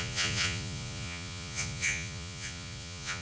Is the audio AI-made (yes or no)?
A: yes